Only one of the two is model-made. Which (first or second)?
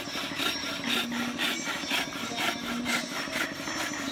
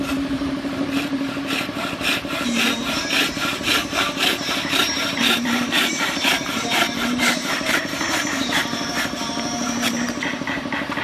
second